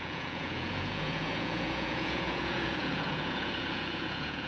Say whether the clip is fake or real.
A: fake